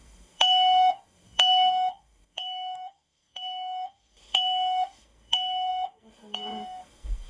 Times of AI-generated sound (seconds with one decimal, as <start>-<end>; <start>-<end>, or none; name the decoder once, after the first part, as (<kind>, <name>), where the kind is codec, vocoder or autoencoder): 0.0-7.3 (codec, SNAC)